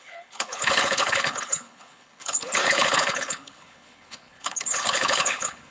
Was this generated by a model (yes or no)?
yes